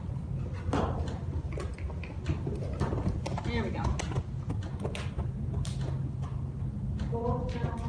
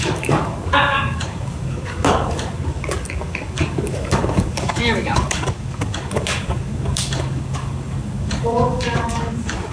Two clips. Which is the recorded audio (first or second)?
first